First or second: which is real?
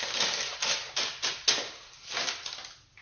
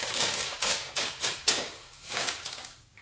first